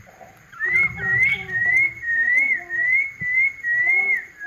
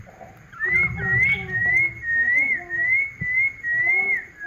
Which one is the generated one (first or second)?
first